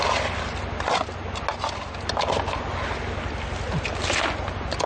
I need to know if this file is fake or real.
real